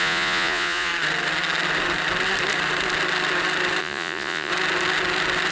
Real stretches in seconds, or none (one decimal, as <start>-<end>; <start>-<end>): 0.9-3.8; 4.5-5.5